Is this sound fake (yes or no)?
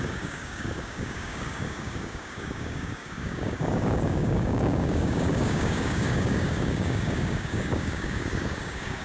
yes